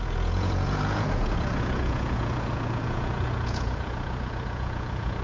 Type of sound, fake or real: fake